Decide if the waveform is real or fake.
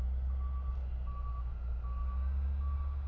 real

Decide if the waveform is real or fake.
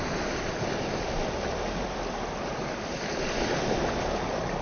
real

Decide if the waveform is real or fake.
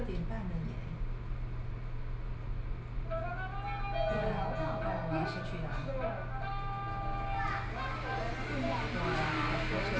real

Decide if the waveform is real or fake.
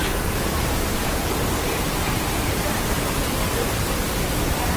fake